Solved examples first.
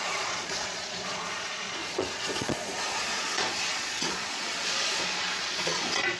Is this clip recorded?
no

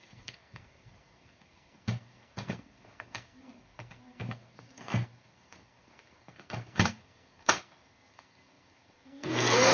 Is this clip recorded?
no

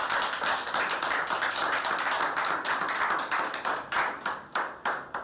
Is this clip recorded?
yes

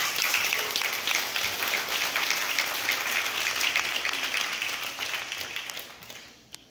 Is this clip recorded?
yes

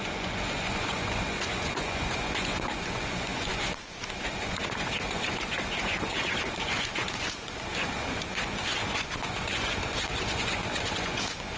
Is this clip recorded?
no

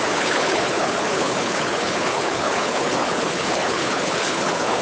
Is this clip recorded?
no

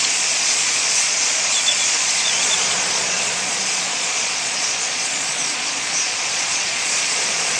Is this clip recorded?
no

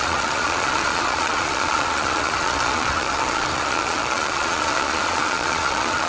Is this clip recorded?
no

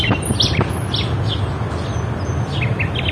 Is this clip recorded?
yes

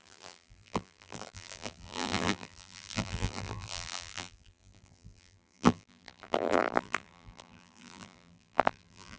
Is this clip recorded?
no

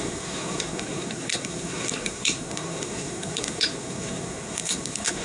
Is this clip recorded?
no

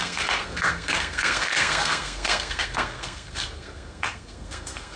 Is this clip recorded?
no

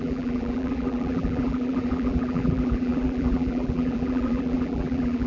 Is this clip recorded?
no